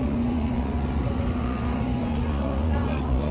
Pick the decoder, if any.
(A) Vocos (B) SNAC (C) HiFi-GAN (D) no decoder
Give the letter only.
A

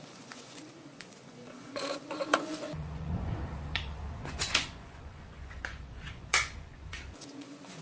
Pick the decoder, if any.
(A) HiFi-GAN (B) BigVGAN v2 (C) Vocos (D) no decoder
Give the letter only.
C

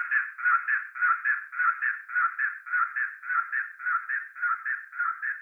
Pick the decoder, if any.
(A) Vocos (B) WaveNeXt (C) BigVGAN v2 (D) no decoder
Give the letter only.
D